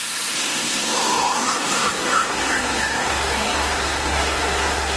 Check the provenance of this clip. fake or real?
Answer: fake